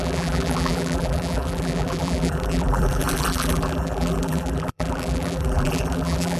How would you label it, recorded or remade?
remade